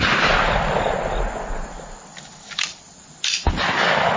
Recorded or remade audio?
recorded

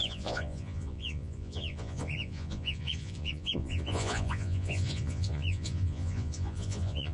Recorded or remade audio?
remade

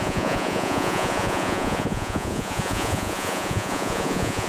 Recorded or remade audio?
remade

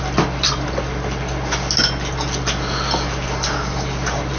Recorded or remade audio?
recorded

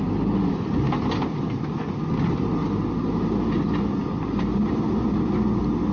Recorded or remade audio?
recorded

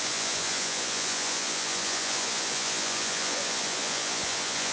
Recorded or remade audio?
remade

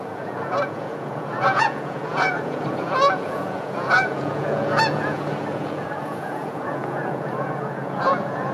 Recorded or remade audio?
remade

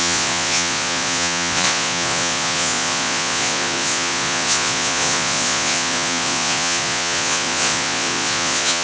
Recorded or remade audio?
remade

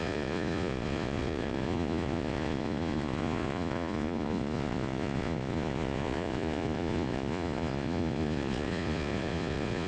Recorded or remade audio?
remade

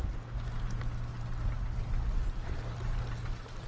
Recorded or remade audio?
recorded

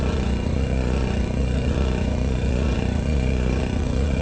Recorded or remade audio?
remade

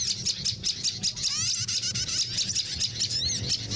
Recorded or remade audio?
recorded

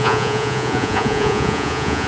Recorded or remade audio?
remade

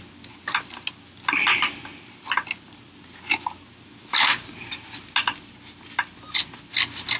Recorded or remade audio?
recorded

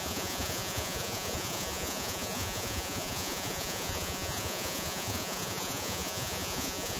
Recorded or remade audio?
remade